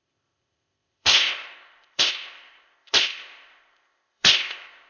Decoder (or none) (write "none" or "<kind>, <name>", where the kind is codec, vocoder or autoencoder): codec, ZipCodec